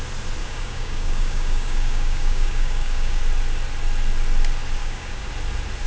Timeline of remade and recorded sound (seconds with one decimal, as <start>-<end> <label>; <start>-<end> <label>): 0.0-0.4 recorded; 0.4-3.2 remade; 3.2-4.8 recorded; 4.8-5.3 remade; 5.3-5.9 recorded